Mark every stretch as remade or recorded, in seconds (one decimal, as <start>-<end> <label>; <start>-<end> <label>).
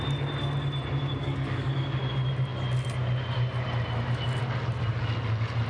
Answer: 0.0-1.2 recorded; 1.2-2.0 remade; 2.0-5.7 recorded